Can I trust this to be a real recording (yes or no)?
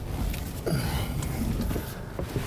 yes